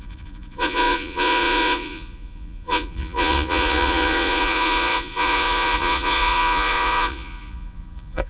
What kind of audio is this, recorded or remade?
remade